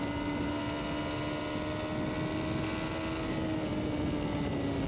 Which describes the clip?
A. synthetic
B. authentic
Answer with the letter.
B